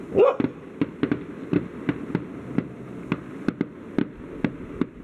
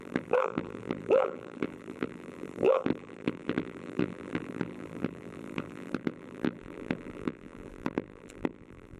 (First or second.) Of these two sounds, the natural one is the first